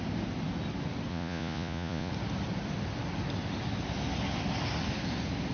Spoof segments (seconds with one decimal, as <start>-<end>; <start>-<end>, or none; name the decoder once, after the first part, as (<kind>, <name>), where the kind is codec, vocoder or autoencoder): 1.1-2.1 (vocoder, Vocos)